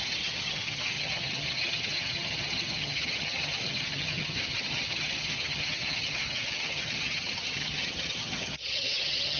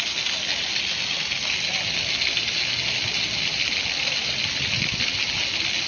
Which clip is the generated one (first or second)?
first